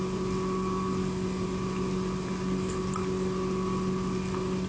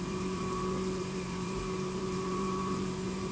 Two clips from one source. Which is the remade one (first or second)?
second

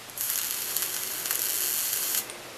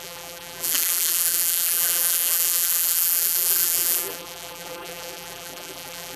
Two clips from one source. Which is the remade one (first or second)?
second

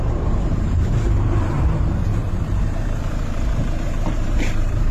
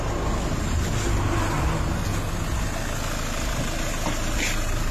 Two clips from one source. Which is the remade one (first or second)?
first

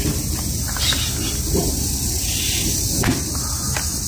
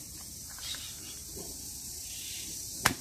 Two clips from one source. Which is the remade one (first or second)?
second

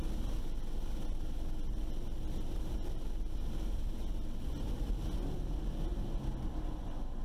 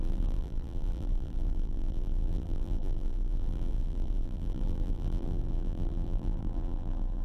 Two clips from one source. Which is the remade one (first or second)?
second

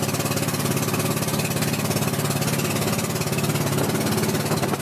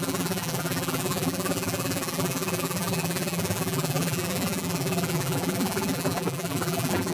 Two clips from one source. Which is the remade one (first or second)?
second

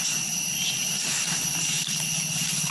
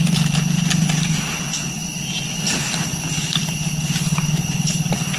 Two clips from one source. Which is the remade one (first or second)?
first